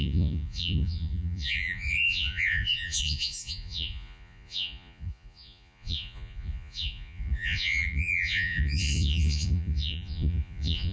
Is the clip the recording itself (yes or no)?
no